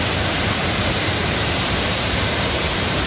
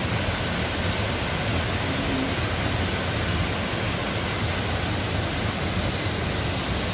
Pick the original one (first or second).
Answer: second